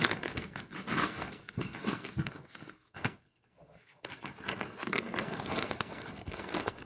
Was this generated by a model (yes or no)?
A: yes